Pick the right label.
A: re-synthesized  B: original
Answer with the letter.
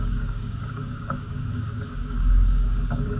A